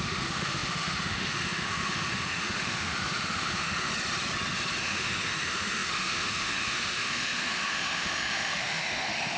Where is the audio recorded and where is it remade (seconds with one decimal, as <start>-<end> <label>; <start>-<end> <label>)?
0.0-3.9 remade; 3.9-4.8 recorded; 4.8-9.4 remade